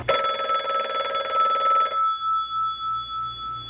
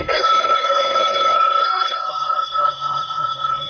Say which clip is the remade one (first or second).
second